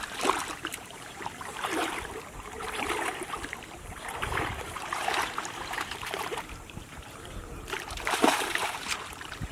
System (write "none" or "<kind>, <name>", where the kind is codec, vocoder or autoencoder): vocoder, BigVGAN v2